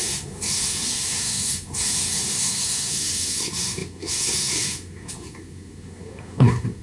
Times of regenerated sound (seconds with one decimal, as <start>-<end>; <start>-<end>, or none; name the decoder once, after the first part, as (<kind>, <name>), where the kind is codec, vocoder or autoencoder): 0.0-6.8 (codec, SNAC)